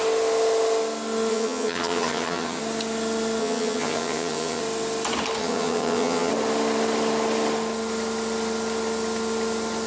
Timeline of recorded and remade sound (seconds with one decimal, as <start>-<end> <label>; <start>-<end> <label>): 0.0-1.3 recorded; 1.3-2.6 remade; 2.6-3.4 recorded; 3.4-4.6 remade; 4.6-5.4 recorded; 5.4-6.3 remade; 6.3-9.9 recorded